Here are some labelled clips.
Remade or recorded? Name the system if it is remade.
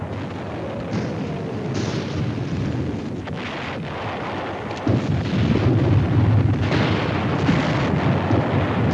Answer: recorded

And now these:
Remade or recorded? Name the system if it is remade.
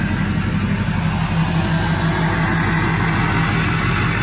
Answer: recorded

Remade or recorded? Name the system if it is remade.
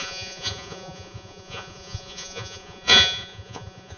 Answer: remade, vocoder, Vocos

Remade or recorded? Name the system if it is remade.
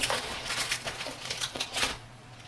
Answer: remade, vocoder, Vocos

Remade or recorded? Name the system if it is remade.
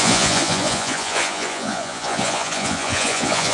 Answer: remade, vocoder, Vocos